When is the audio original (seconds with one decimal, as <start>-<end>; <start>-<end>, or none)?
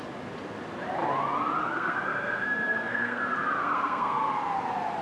0.0-1.6; 3.2-3.6; 4.2-5.0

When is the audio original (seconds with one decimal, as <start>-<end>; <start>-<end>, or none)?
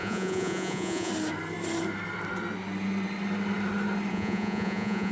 1.1-4.1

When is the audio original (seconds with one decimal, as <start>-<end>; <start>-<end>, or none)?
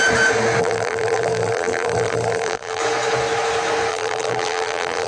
0.0-0.6; 2.8-3.9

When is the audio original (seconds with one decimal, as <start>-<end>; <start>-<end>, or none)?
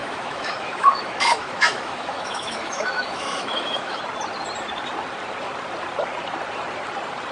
4.0-7.3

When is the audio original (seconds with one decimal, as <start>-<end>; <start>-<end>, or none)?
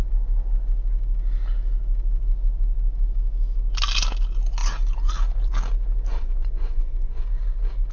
0.0-6.1; 7.2-7.9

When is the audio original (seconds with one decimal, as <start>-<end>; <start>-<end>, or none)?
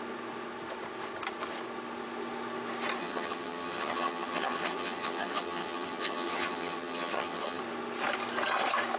0.0-3.0; 7.6-9.0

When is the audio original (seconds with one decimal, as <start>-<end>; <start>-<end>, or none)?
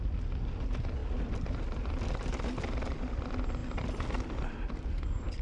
0.0-1.0; 1.6-5.4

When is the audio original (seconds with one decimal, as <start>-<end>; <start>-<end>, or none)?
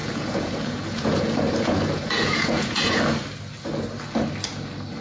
3.0-5.0